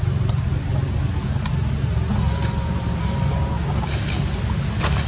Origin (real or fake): real